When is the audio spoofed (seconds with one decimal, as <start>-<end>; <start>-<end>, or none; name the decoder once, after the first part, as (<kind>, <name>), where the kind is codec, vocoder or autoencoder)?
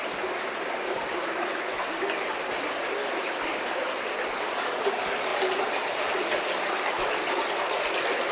5.3-6.5 (vocoder, BigVGAN v2)